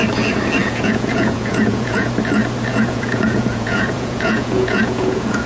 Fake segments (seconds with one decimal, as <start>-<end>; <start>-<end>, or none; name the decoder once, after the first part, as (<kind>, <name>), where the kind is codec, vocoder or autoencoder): 0.6-2.1 (vocoder, Vocos); 2.7-5.5